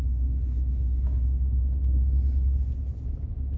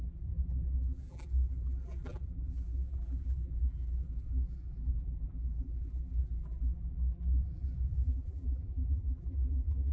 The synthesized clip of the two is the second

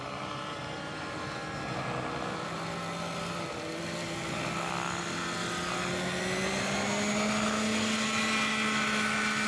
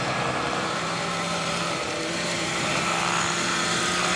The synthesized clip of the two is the second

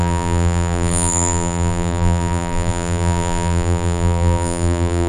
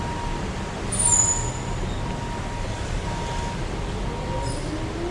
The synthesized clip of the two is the first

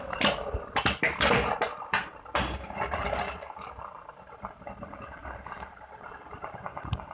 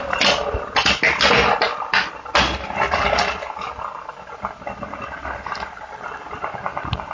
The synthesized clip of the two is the first